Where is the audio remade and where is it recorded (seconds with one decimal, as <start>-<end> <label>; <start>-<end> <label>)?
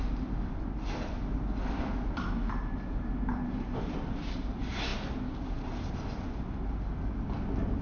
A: 0.0-7.8 recorded